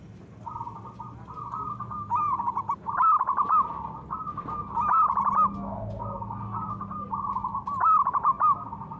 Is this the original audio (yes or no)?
yes